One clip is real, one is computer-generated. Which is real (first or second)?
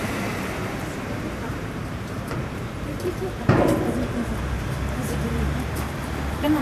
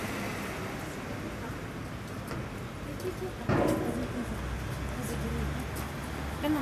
second